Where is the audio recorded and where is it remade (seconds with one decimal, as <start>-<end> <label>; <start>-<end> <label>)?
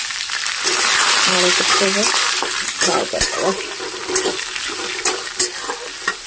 0.0-3.5 remade; 3.5-6.3 recorded